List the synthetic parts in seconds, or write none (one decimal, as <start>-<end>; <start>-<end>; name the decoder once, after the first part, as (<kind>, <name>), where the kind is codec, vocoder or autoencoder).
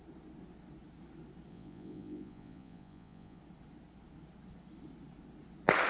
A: 1.5-3.4 (vocoder, Vocos)